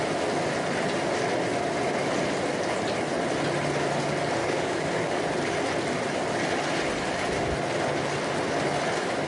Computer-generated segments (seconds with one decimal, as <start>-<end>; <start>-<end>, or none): 4.4-5.2